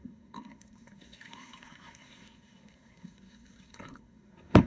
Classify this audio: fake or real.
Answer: fake